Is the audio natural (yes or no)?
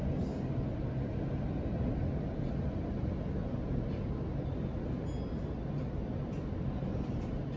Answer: yes